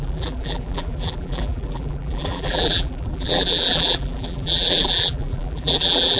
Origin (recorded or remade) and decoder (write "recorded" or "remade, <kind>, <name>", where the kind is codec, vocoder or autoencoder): remade, vocoder, BigVGAN v2